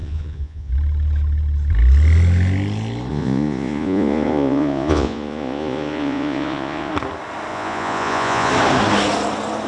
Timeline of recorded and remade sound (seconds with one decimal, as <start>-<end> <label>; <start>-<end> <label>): 0.0-0.7 remade; 0.7-3.1 recorded; 3.1-6.9 remade; 6.9-7.5 recorded; 7.5-8.5 remade; 8.5-9.7 recorded

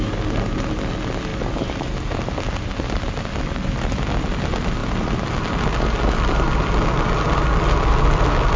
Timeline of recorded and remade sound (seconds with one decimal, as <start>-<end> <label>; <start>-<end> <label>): 0.0-8.6 recorded

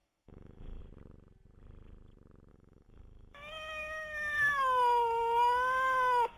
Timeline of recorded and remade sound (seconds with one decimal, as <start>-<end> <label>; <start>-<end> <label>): 0.0-0.8 remade; 0.8-2.5 recorded; 2.5-6.4 remade

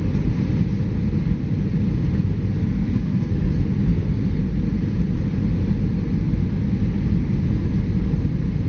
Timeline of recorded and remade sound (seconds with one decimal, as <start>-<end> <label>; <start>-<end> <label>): 0.0-2.6 recorded; 2.6-3.5 remade; 3.5-3.9 recorded; 3.9-4.4 remade; 4.4-8.7 recorded

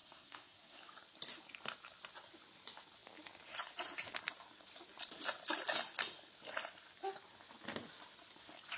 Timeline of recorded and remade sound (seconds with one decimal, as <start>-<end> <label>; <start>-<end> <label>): 0.0-0.8 remade; 0.8-8.8 recorded

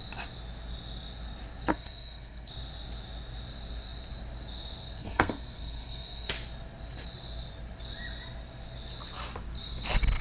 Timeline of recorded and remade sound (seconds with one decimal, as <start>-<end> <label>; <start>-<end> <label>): 0.0-1.7 recorded; 1.7-2.5 remade; 2.5-5.0 recorded; 5.0-6.3 remade; 6.3-10.2 recorded

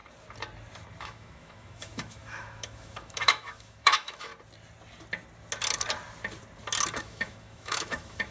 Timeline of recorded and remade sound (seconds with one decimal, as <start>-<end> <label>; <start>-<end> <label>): 0.0-1.0 recorded; 1.0-4.3 remade; 4.3-7.0 recorded; 7.0-8.3 remade